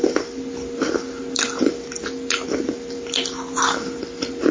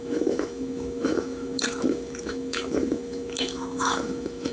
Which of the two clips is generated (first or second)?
second